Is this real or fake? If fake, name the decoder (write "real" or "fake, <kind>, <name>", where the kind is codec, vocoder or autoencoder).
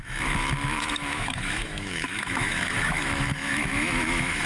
fake, autoencoder, DAC-VAE